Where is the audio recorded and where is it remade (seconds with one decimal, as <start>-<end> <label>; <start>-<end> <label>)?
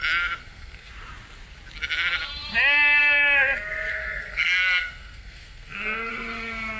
0.0-0.4 recorded; 0.4-0.9 remade; 0.9-3.9 recorded; 3.9-6.1 remade; 6.1-6.8 recorded